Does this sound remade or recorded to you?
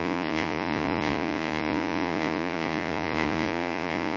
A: remade